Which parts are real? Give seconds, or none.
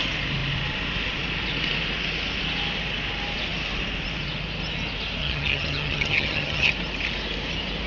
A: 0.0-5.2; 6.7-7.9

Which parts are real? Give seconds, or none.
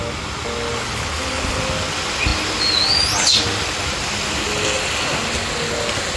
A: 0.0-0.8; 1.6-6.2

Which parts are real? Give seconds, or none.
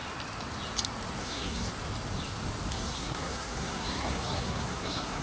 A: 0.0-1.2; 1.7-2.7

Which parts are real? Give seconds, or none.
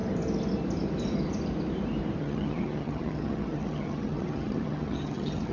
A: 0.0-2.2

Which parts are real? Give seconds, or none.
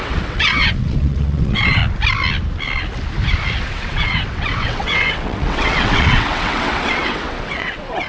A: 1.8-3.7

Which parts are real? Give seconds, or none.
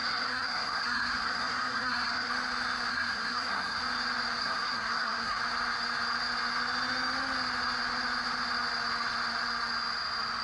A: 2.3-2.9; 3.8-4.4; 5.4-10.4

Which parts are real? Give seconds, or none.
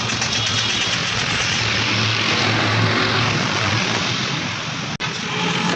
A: 0.0-1.0; 1.6-3.4; 4.0-5.8